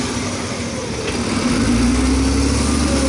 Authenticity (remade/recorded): recorded